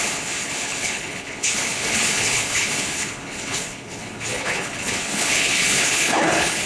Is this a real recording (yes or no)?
no